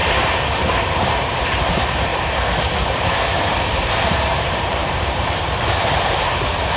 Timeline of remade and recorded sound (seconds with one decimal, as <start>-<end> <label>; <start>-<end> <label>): 0.0-2.1 remade; 2.1-3.1 recorded; 3.1-6.8 remade